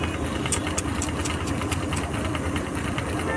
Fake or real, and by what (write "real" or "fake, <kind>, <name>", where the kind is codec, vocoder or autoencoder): real